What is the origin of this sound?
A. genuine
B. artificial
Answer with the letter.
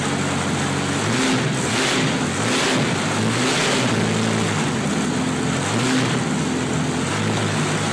A